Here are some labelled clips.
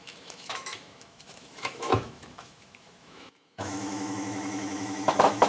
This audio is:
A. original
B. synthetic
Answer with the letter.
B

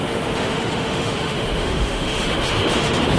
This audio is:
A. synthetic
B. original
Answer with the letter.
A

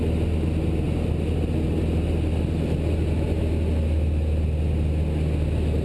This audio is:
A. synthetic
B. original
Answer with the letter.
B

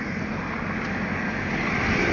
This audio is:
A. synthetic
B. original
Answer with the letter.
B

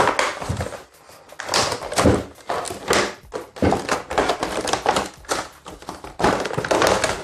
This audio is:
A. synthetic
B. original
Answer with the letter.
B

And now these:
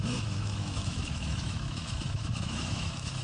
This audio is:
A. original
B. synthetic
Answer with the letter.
B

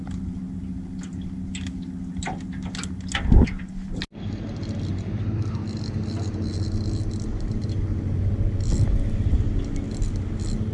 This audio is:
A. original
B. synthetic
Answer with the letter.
A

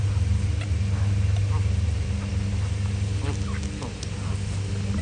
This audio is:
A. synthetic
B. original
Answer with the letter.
B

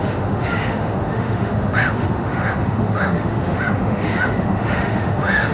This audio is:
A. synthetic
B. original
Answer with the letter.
A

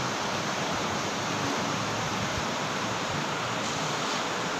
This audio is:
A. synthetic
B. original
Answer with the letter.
B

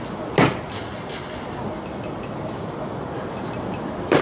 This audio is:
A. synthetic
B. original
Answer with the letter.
B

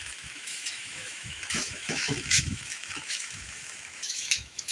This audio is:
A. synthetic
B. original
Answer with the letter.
A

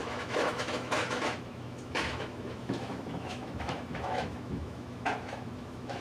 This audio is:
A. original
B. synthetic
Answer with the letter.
B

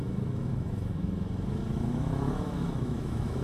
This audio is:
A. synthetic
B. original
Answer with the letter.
A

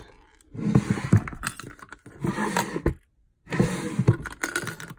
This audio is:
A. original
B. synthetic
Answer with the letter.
A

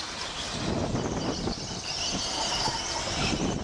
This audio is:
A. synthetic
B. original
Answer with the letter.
B